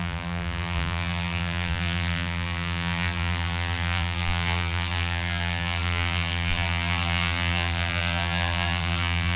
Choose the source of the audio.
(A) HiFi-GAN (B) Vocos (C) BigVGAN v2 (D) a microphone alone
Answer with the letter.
C